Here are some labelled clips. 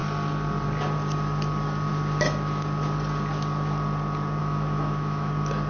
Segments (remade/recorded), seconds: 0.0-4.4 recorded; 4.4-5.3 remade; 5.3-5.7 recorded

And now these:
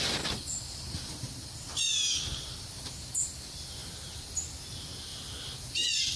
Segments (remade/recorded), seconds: 0.0-6.2 recorded